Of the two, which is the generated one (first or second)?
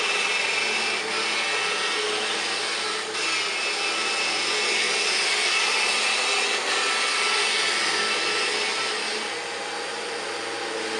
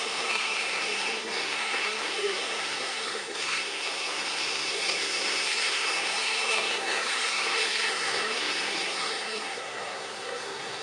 second